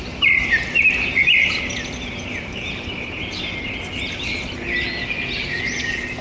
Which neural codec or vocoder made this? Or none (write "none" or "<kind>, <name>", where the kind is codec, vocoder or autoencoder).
none